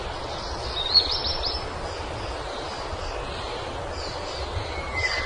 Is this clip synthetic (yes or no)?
no